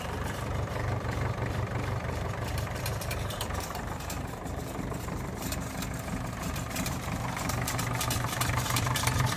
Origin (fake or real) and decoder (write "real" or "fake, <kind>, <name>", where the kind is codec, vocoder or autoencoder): fake, vocoder, BigVGAN v2